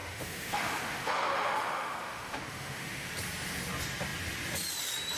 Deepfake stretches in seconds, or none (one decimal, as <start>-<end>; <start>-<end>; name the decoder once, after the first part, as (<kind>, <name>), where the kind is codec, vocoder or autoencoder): 0.0-3.1 (autoencoder, DAC-VAE)